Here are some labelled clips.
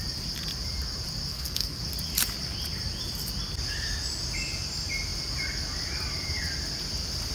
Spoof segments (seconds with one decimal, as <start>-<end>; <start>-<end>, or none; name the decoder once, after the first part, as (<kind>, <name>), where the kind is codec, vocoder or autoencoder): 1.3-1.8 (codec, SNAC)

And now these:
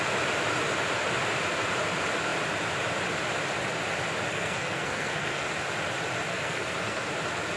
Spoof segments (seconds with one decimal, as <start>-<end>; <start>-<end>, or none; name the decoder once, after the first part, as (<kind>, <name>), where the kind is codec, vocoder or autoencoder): 4.3-5.5 (codec, SNAC); 6.3-7.1

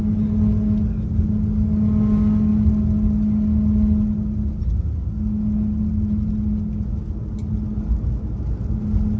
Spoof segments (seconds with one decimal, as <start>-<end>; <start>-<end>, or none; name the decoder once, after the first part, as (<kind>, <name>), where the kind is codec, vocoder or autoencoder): none

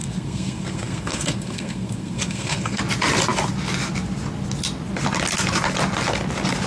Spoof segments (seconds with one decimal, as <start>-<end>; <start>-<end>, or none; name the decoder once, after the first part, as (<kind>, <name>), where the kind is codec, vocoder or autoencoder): 0.0-2.8 (codec, SNAC)

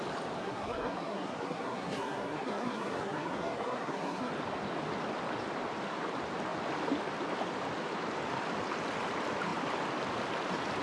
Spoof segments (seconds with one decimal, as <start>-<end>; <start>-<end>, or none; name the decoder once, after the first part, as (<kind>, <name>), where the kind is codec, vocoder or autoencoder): 0.4-4.3 (codec, SNAC)

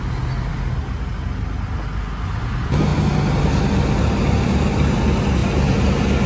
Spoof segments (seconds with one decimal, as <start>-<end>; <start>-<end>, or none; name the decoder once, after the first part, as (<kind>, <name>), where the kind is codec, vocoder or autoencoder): none

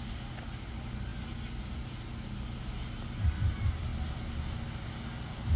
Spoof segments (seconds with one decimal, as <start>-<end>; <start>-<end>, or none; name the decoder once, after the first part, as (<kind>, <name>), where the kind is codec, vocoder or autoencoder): none